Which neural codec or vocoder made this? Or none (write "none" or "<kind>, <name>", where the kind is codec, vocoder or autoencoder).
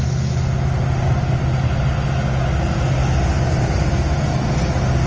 none